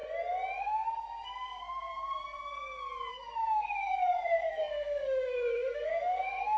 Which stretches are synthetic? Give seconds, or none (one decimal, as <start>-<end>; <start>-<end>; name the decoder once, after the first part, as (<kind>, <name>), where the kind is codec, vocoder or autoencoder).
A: 0.6-1.9 (codec, SNAC); 3.1-6.6